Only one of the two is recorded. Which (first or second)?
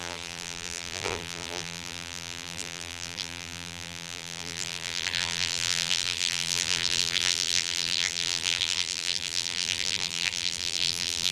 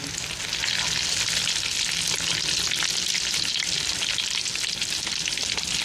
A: second